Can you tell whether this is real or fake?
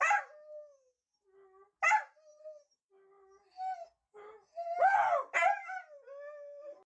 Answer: real